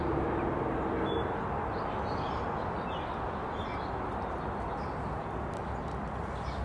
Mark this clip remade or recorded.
recorded